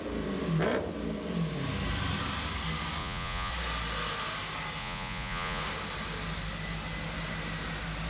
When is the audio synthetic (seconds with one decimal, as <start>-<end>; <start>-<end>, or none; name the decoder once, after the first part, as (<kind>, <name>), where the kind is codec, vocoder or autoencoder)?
3.0-3.5 (vocoder, Vocos); 4.8-5.6